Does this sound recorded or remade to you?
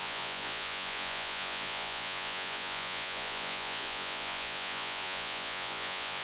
remade